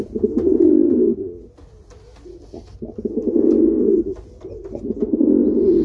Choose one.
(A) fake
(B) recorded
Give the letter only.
B